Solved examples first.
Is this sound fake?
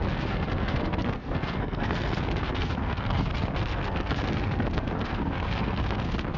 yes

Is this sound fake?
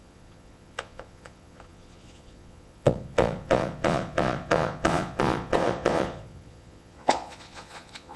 yes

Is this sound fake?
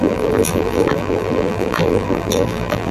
yes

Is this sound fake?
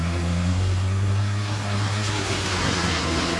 yes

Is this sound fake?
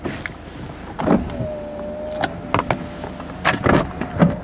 no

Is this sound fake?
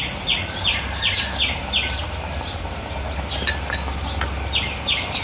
no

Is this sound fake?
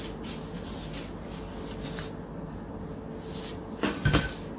no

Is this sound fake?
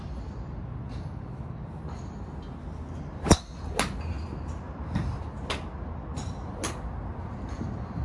no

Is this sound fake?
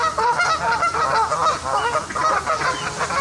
no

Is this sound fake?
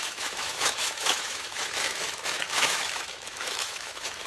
yes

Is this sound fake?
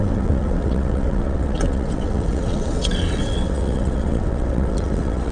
yes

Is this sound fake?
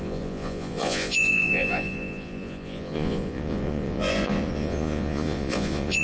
yes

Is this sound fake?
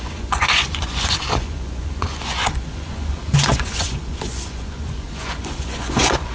yes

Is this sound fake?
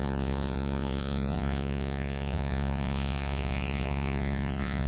yes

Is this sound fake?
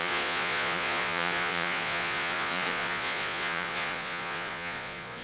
yes